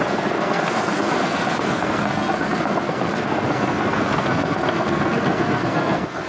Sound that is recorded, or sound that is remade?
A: remade